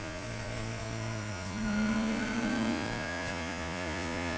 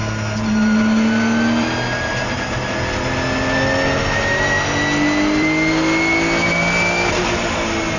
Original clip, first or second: second